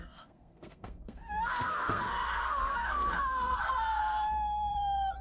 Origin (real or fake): fake